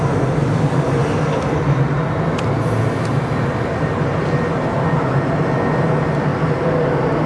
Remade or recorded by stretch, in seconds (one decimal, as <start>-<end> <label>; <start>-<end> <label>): 0.0-7.3 recorded